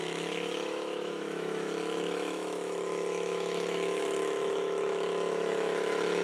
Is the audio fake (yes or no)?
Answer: yes